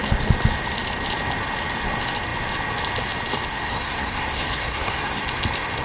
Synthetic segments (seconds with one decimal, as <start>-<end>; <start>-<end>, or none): 3.5-5.2